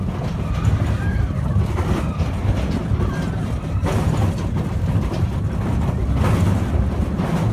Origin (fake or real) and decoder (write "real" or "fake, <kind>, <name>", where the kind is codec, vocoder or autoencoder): real